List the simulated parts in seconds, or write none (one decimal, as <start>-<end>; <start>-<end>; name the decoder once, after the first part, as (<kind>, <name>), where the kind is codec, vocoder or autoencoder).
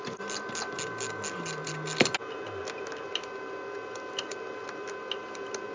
none